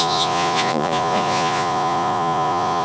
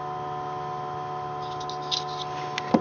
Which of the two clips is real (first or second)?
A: second